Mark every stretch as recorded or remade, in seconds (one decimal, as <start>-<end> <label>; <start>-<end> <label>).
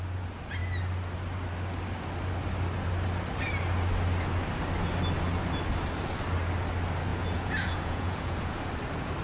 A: 0.0-7.1 recorded; 7.1-8.6 remade; 8.6-9.2 recorded